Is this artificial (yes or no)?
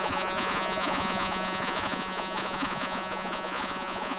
yes